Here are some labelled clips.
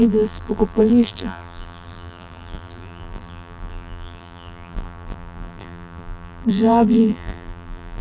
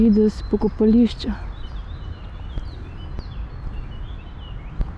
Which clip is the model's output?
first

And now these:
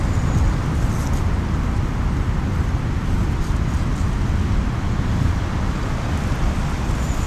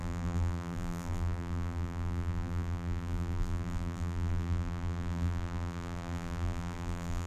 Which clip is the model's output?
second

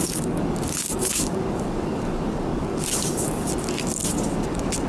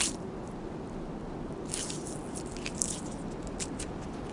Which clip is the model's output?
first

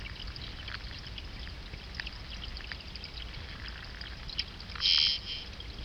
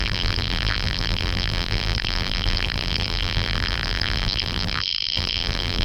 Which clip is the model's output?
second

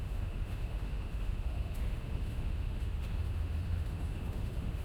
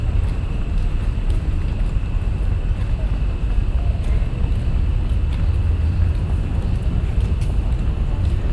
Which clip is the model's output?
first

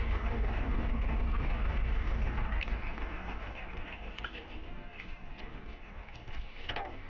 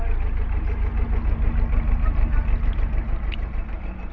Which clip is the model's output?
first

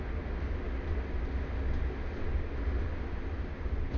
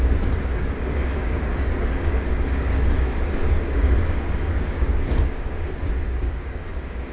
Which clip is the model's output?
second